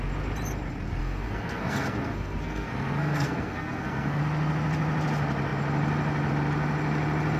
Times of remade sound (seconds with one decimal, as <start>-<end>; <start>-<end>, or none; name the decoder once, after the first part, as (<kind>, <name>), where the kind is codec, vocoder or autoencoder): 1.0-4.2 (codec, SNAC)